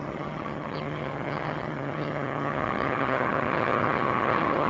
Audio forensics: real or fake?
fake